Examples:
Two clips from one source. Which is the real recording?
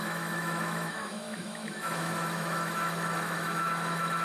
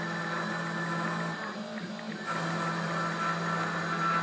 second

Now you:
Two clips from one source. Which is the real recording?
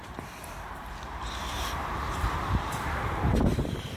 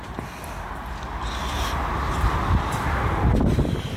second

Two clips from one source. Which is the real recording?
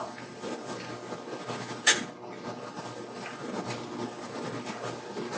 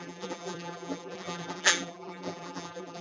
first